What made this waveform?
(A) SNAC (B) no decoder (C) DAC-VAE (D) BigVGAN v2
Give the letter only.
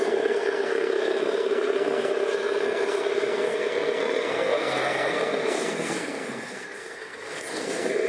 A